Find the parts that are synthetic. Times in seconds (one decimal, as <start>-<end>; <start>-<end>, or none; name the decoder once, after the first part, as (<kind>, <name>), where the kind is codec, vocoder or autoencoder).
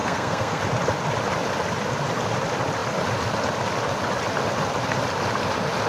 0.0-0.6 (codec, SNAC)